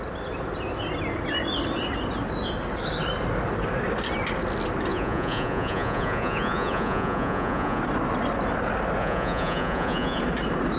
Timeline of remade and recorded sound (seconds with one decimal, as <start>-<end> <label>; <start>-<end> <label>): 0.0-4.9 recorded; 4.9-7.8 remade; 7.8-9.0 recorded; 9.0-10.2 remade; 10.2-10.8 recorded